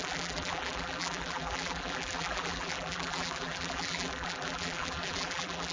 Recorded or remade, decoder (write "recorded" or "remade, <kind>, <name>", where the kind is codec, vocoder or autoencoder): remade, vocoder, BigVGAN v2